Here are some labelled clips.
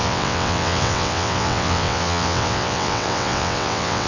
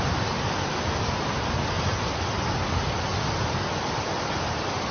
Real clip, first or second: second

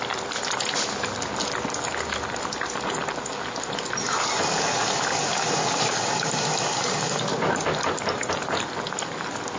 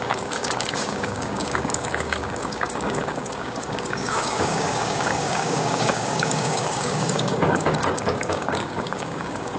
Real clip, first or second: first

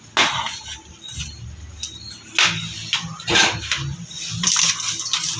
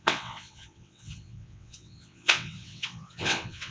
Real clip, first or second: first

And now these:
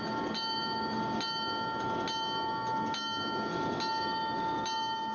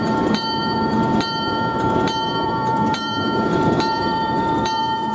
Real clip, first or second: first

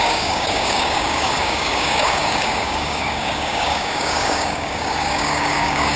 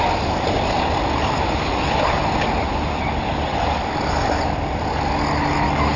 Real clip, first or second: second